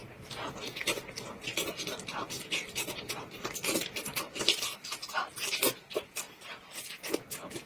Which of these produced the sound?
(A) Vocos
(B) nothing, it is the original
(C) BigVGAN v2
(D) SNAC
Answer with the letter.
B